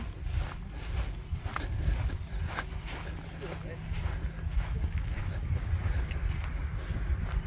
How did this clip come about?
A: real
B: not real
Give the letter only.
A